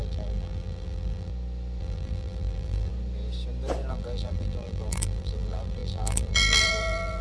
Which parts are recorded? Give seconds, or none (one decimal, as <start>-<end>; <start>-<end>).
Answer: 1.3-1.8; 2.9-3.9